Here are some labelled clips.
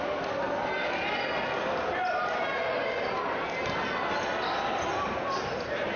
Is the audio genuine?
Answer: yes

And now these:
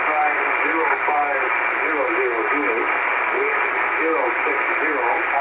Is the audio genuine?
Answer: yes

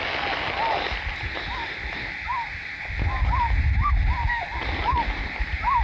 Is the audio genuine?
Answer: yes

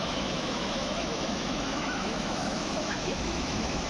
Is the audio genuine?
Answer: no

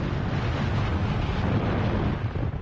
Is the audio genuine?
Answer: yes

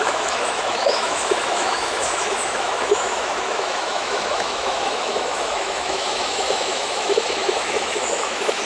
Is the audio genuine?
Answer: no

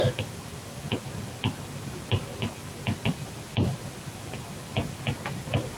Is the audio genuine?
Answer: yes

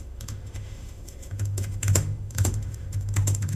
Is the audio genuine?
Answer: no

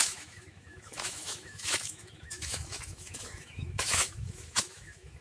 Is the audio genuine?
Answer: no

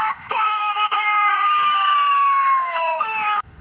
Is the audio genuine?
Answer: no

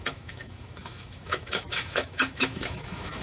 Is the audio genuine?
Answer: no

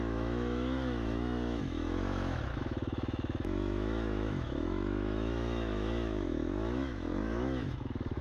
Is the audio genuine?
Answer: no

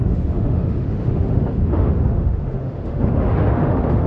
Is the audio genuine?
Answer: no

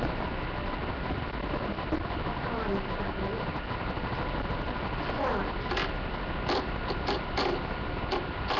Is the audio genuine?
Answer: yes